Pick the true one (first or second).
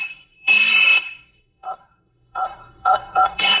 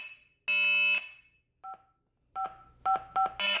second